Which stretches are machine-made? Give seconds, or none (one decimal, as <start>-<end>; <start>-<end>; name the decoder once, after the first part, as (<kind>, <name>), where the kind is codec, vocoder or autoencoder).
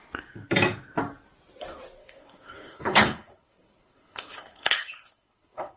2.0-5.8 (codec, HILCodec)